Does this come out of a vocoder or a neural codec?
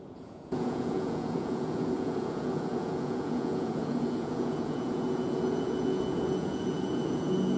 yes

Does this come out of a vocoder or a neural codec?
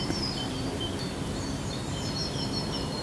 yes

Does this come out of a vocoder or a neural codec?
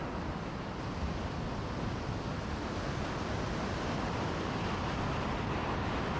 no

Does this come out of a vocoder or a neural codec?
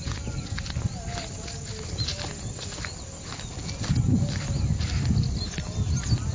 no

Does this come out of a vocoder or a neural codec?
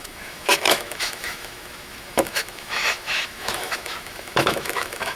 yes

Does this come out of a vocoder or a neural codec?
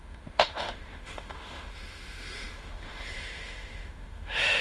yes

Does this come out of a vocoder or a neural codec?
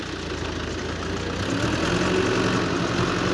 no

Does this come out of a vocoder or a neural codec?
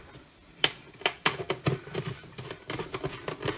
no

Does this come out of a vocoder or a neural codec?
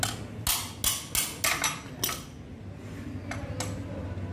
no